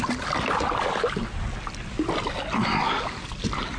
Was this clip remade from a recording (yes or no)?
no